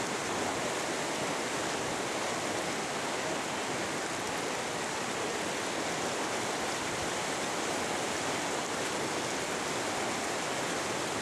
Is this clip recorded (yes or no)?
yes